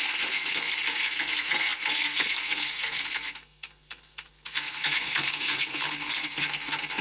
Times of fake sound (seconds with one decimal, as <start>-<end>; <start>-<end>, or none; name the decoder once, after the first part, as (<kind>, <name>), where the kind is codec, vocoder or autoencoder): 0.0-7.0 (codec, SNAC)